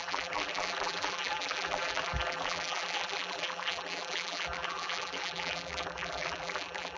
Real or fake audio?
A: fake